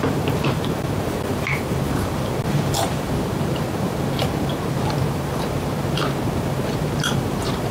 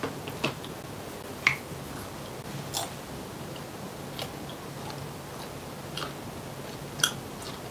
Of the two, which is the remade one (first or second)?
first